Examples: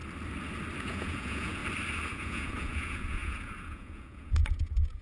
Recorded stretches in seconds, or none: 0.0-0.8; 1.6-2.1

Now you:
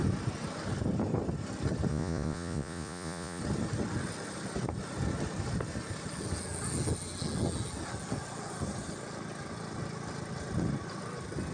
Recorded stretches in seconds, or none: 0.0-1.9; 3.4-11.5

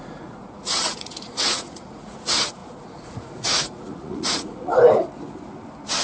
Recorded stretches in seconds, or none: 4.7-6.0

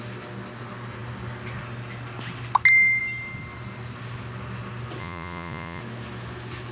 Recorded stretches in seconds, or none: 0.0-5.0; 5.8-6.7

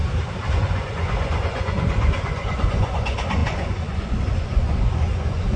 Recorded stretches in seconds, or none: 0.0-0.5

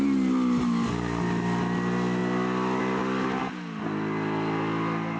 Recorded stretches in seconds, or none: 0.0-5.2

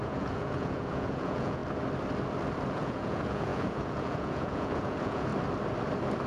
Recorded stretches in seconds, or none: 1.6-2.7; 5.3-6.3